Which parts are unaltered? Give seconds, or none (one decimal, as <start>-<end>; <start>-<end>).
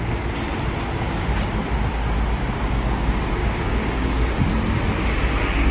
0.0-3.4; 4.4-5.7